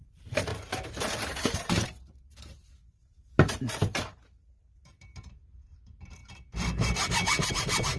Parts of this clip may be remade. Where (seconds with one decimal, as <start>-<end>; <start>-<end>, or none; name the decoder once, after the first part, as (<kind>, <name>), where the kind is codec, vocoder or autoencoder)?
0.0-6.2 (vocoder, BigVGAN v2); 7.5-8.0